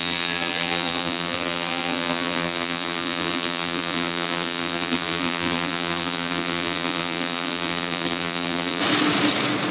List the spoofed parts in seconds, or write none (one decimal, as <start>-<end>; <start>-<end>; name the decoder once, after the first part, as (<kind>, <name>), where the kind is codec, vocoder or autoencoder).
0.0-8.8 (vocoder, BigVGAN v2)